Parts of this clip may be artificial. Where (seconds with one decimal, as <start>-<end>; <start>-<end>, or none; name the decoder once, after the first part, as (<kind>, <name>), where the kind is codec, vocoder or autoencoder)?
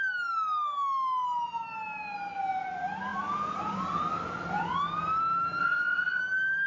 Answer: 5.6-6.2 (vocoder, WaveNeXt)